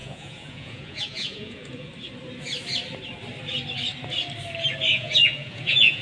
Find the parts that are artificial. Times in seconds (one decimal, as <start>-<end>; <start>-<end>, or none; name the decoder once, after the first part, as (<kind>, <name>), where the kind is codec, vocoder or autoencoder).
0.0-1.9 (vocoder, Vocos); 4.9-6.0